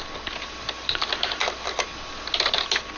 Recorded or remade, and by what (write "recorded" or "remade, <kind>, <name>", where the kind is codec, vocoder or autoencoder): recorded